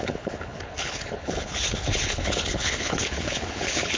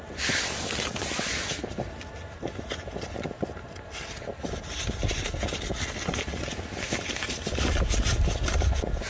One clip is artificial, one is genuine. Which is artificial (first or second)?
first